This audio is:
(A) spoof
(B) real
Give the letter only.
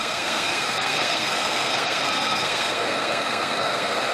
A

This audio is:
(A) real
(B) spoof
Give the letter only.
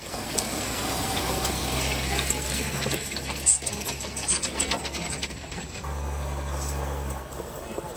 B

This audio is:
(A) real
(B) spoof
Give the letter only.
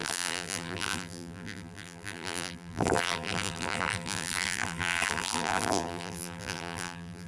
B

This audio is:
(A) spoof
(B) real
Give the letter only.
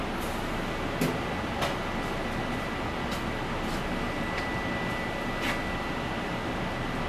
B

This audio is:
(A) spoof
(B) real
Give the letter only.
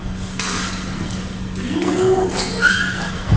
A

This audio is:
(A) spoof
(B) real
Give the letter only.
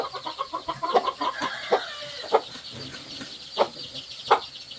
B